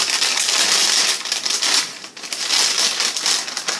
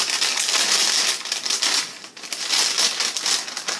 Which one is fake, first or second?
first